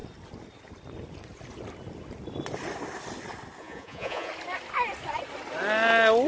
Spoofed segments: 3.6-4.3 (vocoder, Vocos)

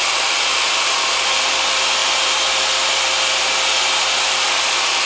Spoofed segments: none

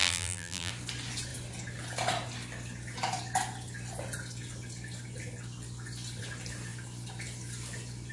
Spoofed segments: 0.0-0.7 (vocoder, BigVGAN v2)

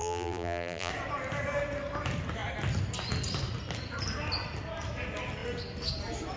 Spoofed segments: 0.0-0.9 (vocoder, BigVGAN v2)

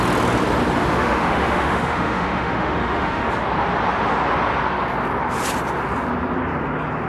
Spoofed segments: 0.8-3.3 (autoencoder, DAC-VAE)

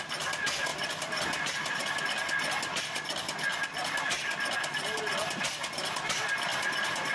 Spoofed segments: 0.7-2.0 (vocoder, BigVGAN v2); 6.5-7.1

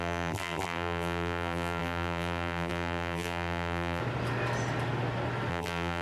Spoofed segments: 0.0-4.0 (vocoder, BigVGAN v2); 5.5-6.0

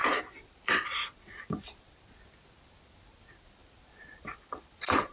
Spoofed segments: 0.0-2.1 (vocoder, BigVGAN v2); 3.6-5.1